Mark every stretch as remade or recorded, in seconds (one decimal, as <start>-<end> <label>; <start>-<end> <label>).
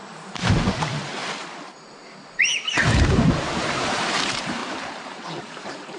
0.0-1.2 remade; 1.2-2.6 recorded; 2.6-6.0 remade